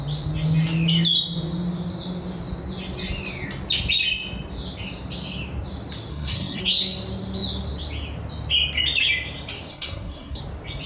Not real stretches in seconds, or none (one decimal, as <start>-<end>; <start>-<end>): 6.1-6.6; 9.7-10.4